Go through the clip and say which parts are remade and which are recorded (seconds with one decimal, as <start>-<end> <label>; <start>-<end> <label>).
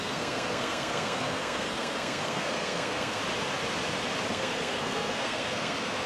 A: 0.0-3.2 remade; 3.2-4.3 recorded; 4.3-6.1 remade